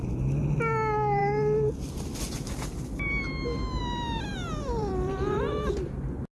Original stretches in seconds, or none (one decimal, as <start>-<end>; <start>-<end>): 0.0-4.3; 5.1-6.4